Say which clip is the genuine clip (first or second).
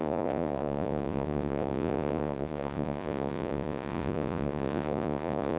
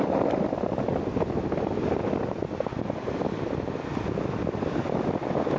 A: second